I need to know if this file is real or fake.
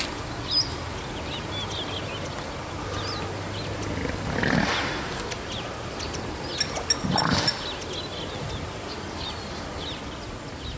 real